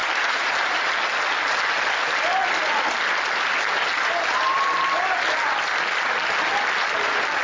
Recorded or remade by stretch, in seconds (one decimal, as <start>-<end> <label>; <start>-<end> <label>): 0.0-1.0 remade; 1.0-7.4 recorded